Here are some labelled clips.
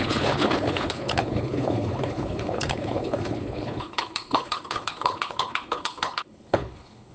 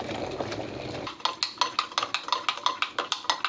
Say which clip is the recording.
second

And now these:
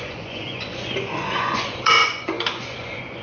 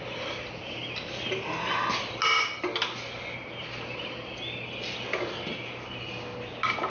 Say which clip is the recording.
second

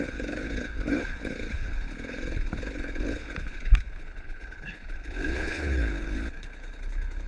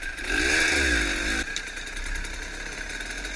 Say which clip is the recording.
second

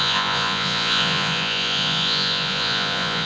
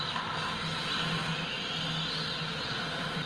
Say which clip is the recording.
second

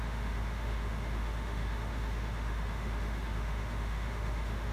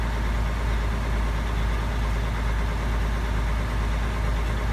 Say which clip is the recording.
second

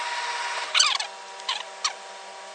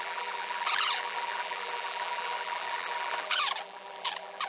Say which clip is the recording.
first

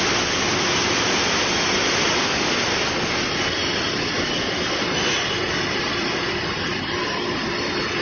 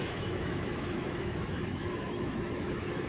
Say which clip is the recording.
first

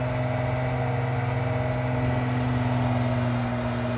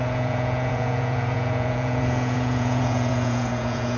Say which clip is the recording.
first